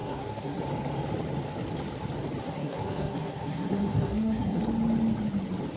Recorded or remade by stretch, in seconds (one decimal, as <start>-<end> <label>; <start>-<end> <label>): 0.0-0.6 remade; 0.6-2.4 recorded; 2.4-4.6 remade; 4.6-5.8 recorded